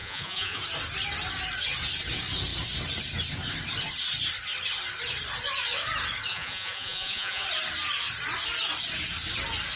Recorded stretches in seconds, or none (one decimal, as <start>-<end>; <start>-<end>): 0.6-6.3; 7.4-9.8